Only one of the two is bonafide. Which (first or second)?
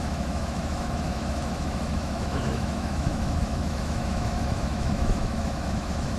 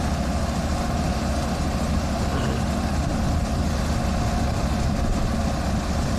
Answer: second